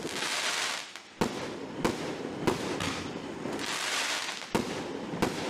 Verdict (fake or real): real